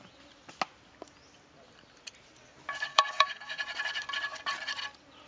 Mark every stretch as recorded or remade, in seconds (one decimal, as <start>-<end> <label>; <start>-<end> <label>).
0.0-2.9 recorded; 2.9-3.6 remade; 3.6-5.3 recorded